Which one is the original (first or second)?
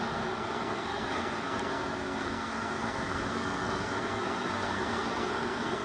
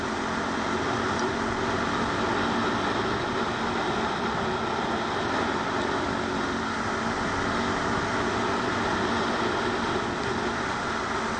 second